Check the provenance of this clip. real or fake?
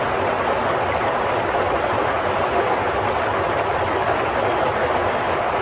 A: real